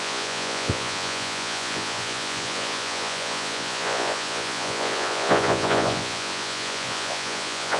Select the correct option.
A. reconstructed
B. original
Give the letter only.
A